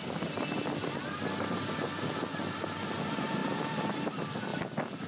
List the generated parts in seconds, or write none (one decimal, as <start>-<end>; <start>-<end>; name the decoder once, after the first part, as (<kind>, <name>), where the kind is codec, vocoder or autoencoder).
none